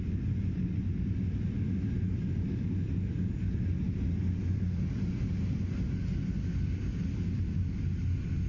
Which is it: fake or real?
real